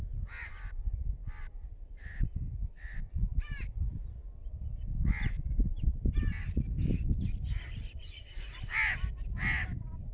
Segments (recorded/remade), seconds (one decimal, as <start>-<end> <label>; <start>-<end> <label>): 0.0-10.1 recorded